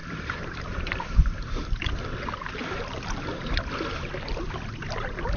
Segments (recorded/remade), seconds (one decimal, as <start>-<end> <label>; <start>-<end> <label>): 0.0-1.6 remade; 1.6-5.4 recorded